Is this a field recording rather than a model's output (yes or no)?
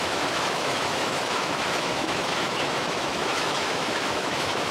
no